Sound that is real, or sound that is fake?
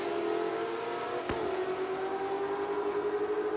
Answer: real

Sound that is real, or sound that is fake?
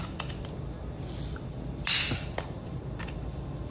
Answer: real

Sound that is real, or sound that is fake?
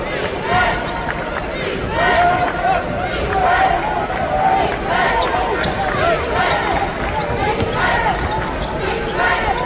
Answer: real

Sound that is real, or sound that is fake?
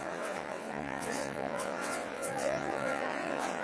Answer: fake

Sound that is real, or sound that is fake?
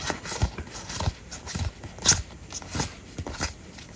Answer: real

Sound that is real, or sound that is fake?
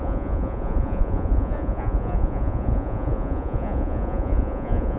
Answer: fake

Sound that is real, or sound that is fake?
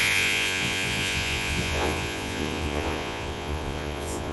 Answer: fake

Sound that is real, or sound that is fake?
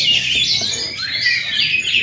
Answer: real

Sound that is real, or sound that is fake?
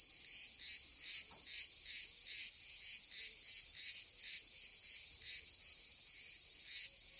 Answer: real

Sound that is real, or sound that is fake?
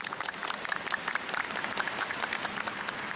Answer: fake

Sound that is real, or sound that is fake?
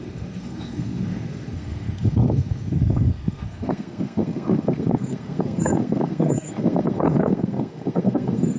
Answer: fake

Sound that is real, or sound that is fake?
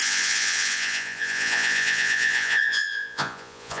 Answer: fake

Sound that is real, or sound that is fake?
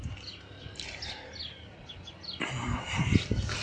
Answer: real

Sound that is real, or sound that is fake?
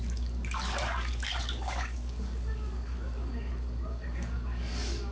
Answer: fake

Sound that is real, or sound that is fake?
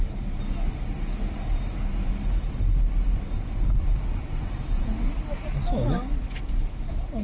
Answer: real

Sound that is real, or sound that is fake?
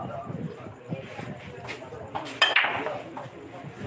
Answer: real